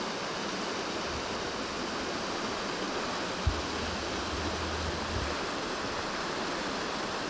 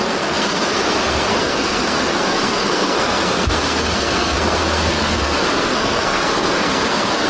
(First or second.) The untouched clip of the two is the first